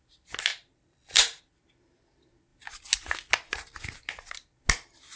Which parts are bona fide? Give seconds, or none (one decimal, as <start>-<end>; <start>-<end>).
0.0-0.5; 1.4-5.2

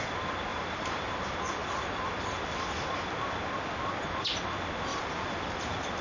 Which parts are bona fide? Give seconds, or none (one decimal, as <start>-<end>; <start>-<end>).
0.0-0.5; 1.1-4.9